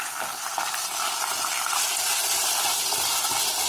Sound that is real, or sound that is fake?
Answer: real